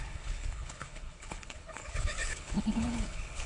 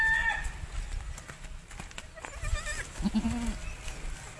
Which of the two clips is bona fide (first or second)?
second